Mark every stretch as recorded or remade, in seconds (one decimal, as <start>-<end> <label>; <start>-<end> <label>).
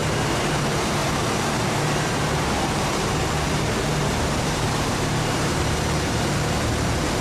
0.0-7.2 remade